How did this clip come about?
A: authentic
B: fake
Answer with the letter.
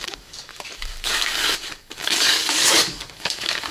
B